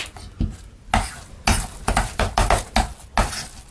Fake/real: real